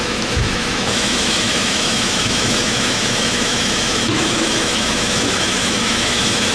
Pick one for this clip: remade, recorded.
remade